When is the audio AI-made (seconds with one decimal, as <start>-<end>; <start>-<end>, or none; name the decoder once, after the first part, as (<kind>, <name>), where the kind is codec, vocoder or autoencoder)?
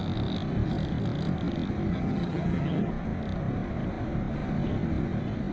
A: 1.9-2.9 (vocoder, HiFi-GAN)